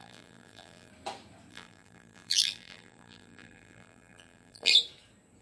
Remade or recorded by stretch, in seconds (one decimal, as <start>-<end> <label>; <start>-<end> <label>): 0.0-0.9 remade; 0.9-1.5 recorded; 1.5-4.7 remade; 4.7-5.4 recorded